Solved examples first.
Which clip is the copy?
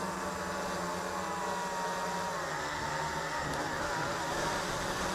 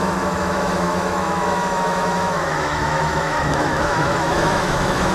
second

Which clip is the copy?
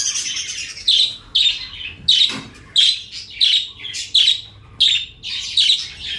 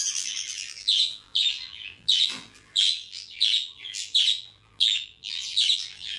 second